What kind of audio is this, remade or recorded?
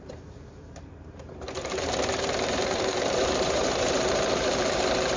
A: remade